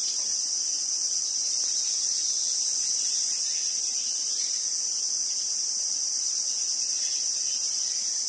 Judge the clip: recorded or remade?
recorded